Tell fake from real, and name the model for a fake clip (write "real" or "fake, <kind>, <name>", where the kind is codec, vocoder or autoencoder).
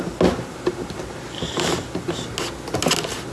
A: real